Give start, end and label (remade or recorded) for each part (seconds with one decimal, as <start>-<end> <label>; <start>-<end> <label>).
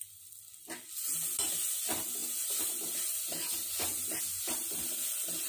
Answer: 0.0-5.5 recorded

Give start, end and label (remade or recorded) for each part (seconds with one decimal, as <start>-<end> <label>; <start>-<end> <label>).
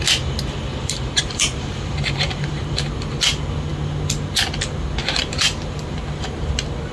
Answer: 0.0-0.8 recorded; 0.8-2.8 remade; 2.8-5.0 recorded; 5.0-6.5 remade; 6.5-6.9 recorded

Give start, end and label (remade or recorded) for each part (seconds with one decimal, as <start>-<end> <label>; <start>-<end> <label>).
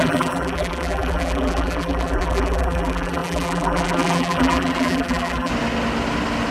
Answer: 0.0-5.5 remade; 5.5-6.5 recorded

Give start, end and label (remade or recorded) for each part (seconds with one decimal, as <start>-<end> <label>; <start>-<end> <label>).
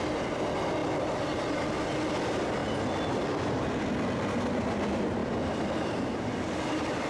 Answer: 0.0-5.2 recorded; 5.2-7.1 remade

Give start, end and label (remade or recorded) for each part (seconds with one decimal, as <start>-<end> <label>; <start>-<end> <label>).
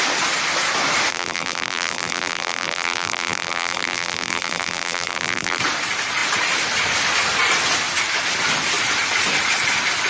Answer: 0.0-1.1 recorded; 1.1-5.6 remade; 5.6-10.1 recorded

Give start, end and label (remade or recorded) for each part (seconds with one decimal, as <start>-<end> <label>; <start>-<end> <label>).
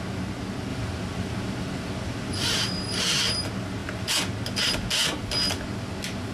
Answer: 0.0-0.7 recorded; 0.7-3.1 remade; 3.1-6.3 recorded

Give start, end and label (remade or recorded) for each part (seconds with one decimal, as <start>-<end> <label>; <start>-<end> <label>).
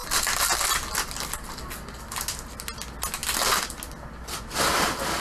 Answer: 0.0-2.1 remade; 2.1-5.2 recorded